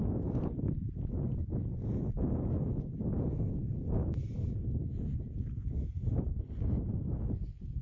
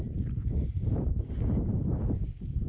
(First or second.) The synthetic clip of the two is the second